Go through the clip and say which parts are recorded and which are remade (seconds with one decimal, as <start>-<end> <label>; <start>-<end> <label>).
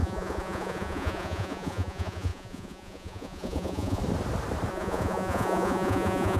0.0-4.0 remade; 4.0-4.7 recorded; 4.7-6.4 remade